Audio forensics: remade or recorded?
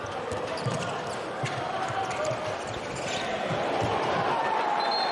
remade